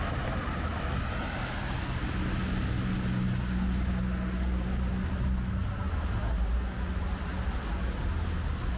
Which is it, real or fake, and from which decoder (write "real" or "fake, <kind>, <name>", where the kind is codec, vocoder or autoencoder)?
real